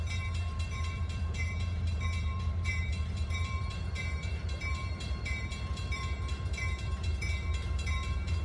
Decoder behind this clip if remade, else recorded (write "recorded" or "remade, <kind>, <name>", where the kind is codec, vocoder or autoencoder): remade, vocoder, BigVGAN v2